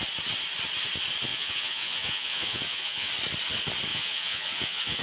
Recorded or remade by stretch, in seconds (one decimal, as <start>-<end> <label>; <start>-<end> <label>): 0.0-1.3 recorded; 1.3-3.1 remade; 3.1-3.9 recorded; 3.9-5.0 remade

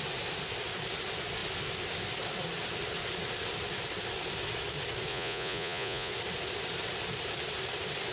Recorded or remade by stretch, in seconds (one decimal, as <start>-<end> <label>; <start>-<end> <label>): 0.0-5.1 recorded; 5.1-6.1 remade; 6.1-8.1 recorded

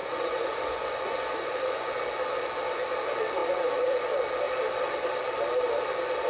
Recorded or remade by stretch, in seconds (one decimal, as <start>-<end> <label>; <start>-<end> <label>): 0.0-1.9 remade; 1.9-6.3 recorded

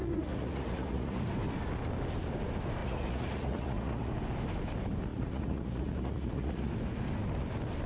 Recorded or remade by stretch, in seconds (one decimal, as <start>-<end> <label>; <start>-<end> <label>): 0.0-1.2 remade; 1.2-2.8 recorded; 2.8-4.1 remade; 4.1-5.1 recorded; 5.1-6.7 remade; 6.7-7.9 recorded

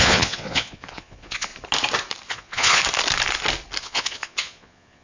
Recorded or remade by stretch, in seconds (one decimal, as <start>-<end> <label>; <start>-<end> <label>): 0.0-1.5 remade; 1.5-2.3 recorded; 2.3-2.8 remade; 2.8-3.8 recorded; 3.8-5.0 remade

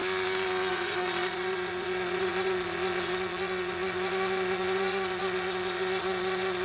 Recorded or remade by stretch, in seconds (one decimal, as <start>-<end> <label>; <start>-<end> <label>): 0.0-0.7 recorded; 0.7-6.6 remade

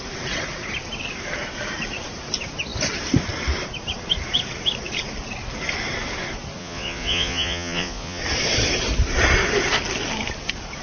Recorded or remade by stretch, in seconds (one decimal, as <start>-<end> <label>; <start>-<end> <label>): 0.0-6.6 recorded; 6.6-8.2 remade; 8.2-10.8 recorded